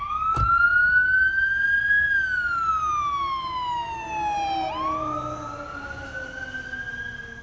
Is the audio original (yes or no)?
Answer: yes